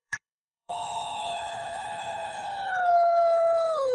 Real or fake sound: fake